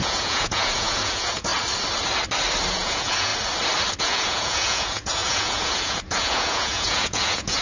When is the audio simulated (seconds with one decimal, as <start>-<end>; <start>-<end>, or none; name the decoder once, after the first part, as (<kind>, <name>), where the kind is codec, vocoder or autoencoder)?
0.0-1.5 (vocoder, Vocos); 2.7-3.3; 4.0-7.6